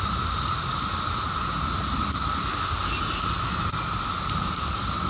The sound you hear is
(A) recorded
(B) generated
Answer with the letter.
A